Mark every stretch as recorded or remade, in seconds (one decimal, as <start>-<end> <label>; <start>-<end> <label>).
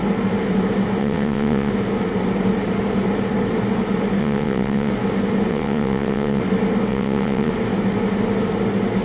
0.0-1.0 recorded; 1.0-1.7 remade; 1.7-4.2 recorded; 4.2-4.9 remade; 4.9-5.5 recorded; 5.5-6.4 remade; 6.4-6.9 recorded; 6.9-7.5 remade; 7.5-9.0 recorded